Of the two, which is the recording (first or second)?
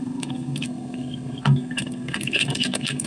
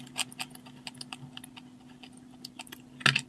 second